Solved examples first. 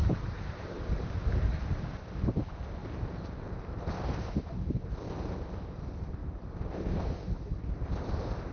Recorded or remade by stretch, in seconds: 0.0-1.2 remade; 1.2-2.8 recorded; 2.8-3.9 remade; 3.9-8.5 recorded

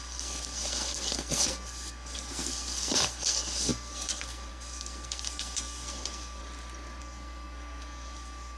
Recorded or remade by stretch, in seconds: 0.0-6.4 remade; 6.4-7.0 recorded; 7.0-8.6 remade

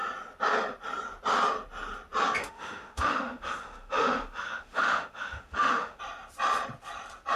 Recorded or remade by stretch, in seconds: 0.0-2.4 recorded; 2.4-6.0 remade; 6.0-7.4 recorded

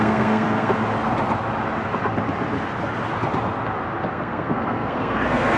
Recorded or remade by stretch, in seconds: 0.0-0.7 remade; 0.7-4.1 recorded; 4.1-5.6 remade

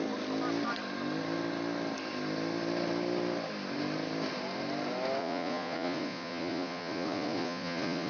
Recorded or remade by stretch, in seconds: 0.0-5.2 recorded; 5.2-8.1 remade

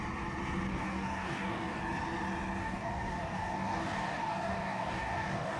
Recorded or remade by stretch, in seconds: 0.0-0.7 recorded; 0.7-1.8 remade; 1.8-2.6 recorded; 2.6-5.6 remade

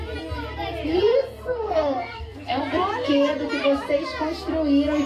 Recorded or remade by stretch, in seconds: 0.0-0.9 recorded; 0.9-2.6 remade; 2.6-5.1 recorded